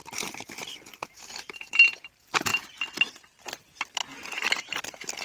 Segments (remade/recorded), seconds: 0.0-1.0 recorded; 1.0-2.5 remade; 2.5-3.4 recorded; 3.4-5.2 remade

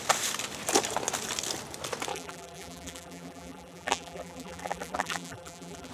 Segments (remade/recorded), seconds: 0.0-2.1 recorded; 2.1-5.9 remade

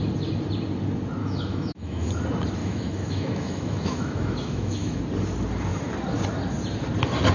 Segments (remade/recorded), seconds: 0.0-1.2 recorded; 1.2-2.1 remade; 2.1-2.6 recorded; 2.6-5.0 remade; 5.0-7.3 recorded

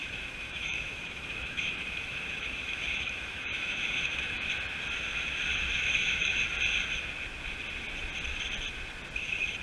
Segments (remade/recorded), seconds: 0.0-4.4 remade; 4.4-5.5 recorded; 5.5-6.4 remade; 6.4-9.6 recorded

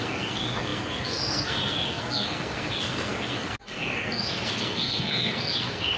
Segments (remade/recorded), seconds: 0.0-6.0 remade